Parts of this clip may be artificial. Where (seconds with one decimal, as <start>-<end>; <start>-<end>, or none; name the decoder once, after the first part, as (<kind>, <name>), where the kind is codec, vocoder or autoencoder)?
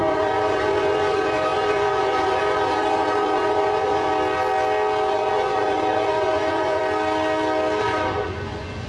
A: 0.0-4.1 (vocoder, Vocos); 5.1-6.8; 7.8-8.9